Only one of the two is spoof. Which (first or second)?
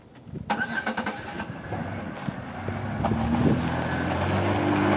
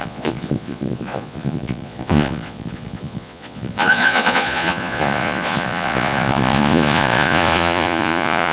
second